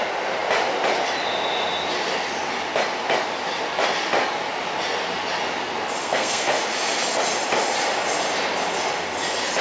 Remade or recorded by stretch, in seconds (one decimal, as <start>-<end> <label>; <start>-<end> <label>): 0.0-6.0 recorded; 6.0-6.5 remade; 6.5-9.6 recorded